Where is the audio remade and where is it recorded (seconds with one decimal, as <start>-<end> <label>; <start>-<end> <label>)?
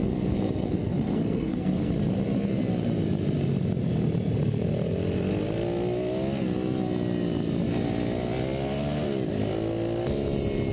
0.0-1.9 remade; 1.9-10.7 recorded